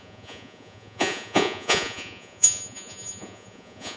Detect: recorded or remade remade